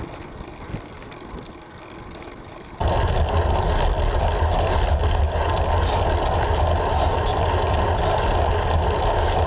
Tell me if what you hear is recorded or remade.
recorded